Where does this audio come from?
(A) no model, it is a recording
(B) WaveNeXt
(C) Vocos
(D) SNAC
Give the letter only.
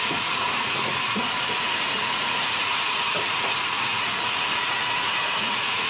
C